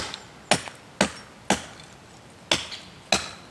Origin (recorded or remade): recorded